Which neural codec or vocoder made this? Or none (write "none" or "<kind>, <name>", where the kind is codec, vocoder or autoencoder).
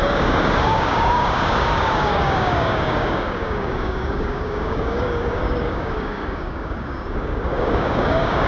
codec, DAC